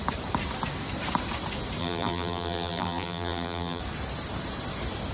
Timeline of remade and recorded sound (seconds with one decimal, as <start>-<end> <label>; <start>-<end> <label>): 0.0-1.8 recorded; 1.8-3.8 remade; 3.8-5.1 recorded